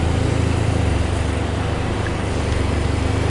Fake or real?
real